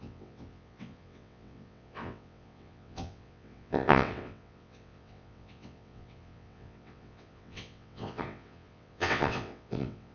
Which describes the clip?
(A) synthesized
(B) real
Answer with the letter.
A